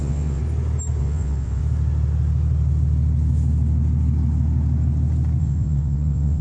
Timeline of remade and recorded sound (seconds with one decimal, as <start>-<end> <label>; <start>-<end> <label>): 0.0-0.4 remade; 0.4-1.0 recorded; 1.0-1.6 remade; 1.6-5.4 recorded; 5.4-6.4 remade